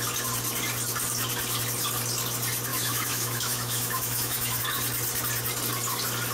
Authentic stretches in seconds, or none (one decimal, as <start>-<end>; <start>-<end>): 0.0-2.7; 4.6-6.3